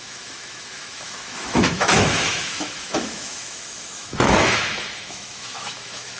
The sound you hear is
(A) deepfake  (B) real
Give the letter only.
A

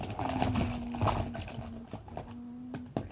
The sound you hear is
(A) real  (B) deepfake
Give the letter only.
A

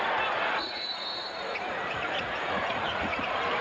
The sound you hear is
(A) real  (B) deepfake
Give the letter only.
B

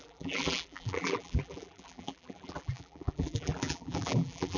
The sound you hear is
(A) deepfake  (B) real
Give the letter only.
A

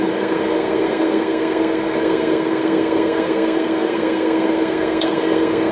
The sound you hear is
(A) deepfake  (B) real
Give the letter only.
A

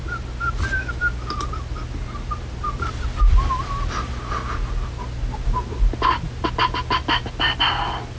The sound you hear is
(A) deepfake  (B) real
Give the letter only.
B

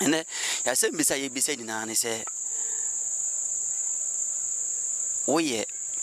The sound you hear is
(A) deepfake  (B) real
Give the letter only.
B